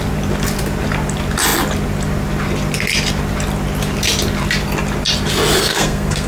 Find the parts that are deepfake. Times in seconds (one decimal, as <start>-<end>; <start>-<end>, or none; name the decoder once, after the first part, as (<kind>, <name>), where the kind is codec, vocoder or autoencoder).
5.6-6.3 (codec, SNAC)